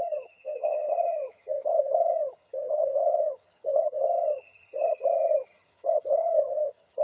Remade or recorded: remade